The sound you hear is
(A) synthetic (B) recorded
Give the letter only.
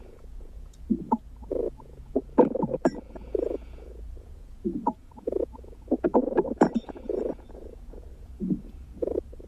A